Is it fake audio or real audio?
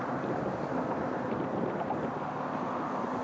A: real